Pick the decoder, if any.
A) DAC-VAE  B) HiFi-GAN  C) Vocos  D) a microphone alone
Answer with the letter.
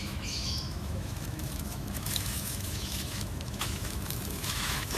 A